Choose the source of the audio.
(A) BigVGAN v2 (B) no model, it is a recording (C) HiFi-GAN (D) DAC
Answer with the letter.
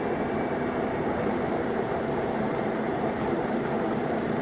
A